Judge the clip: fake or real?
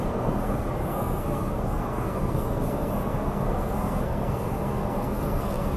fake